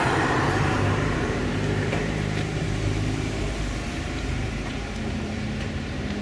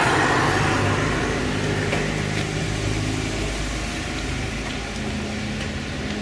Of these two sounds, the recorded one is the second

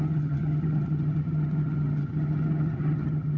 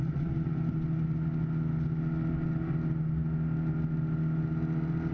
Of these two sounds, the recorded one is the second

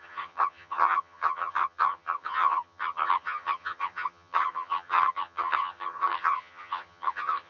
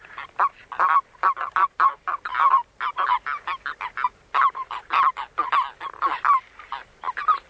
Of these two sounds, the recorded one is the second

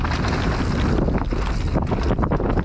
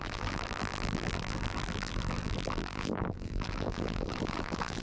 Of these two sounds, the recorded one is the first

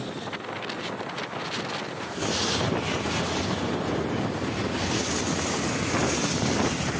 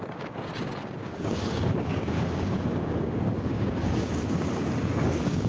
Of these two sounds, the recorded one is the first